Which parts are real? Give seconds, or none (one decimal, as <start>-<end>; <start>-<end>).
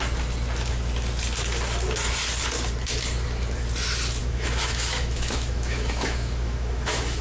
0.0-4.2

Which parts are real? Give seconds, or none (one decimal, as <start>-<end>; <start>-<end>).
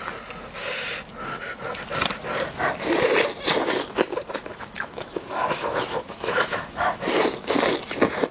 0.0-4.4; 7.1-8.3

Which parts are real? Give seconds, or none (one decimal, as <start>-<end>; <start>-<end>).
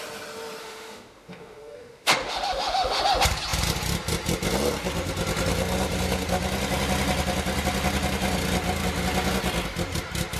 0.0-0.6; 3.0-10.4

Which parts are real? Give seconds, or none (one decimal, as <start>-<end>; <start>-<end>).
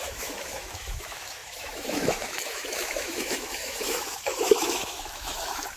none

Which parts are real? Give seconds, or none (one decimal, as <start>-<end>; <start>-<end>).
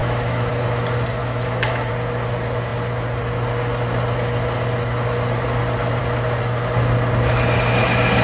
0.5-1.2; 1.9-8.2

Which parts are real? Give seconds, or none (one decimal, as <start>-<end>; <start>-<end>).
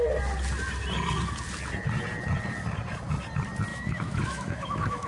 0.0-3.7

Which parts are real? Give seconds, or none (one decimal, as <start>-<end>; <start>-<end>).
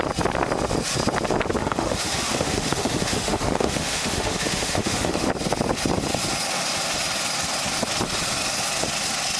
0.0-1.6; 5.3-9.4